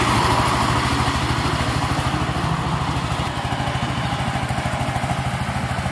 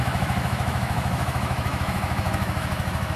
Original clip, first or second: first